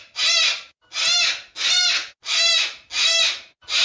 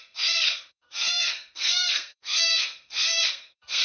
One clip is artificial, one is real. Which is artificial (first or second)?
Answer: second